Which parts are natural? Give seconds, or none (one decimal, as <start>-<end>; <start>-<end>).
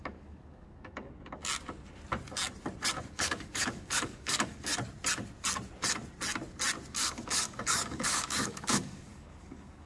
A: 1.4-3.1; 4.7-6.9